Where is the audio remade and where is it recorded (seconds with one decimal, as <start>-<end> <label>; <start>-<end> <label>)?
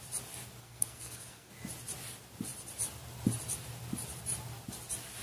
0.0-0.6 recorded; 0.6-1.5 remade; 1.5-5.2 recorded